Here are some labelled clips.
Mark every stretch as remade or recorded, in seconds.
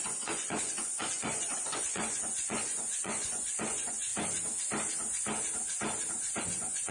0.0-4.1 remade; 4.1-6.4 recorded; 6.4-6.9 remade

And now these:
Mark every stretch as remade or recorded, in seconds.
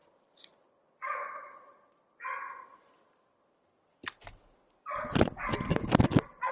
0.0-1.9 remade; 1.9-6.5 recorded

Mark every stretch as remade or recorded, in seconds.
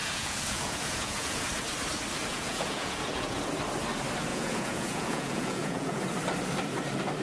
0.0-1.4 remade; 1.4-2.3 recorded; 2.3-3.4 remade; 3.4-4.3 recorded; 4.3-6.0 remade; 6.0-7.2 recorded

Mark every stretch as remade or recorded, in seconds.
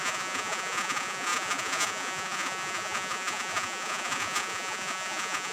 0.0-5.5 remade